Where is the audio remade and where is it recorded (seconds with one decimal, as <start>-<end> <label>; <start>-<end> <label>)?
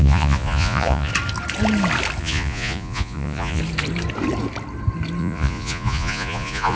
0.0-1.1 remade; 1.1-2.2 recorded; 2.2-3.6 remade; 3.6-5.2 recorded; 5.2-6.8 remade